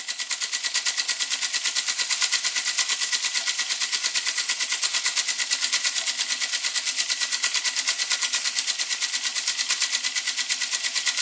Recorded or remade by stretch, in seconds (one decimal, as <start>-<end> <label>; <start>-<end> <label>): 0.0-11.2 recorded